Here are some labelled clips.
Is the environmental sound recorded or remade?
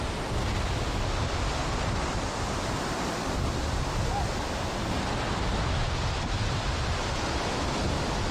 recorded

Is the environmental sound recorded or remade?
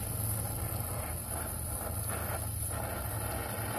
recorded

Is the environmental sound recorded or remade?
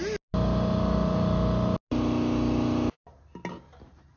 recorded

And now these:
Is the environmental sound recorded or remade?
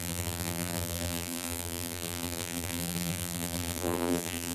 remade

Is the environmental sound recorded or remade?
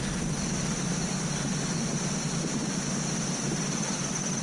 recorded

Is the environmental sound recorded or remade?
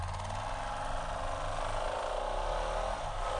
recorded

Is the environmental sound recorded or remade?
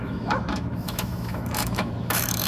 remade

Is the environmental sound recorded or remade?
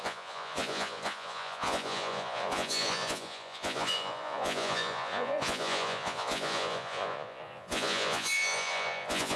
remade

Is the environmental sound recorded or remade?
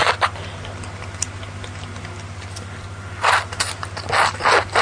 recorded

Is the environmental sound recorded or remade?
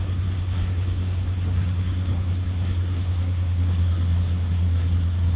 remade